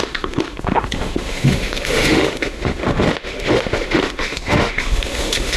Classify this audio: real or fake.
fake